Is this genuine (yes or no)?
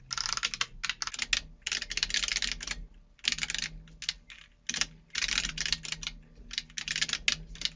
yes